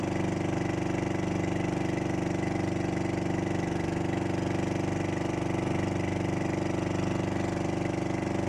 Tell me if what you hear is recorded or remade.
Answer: recorded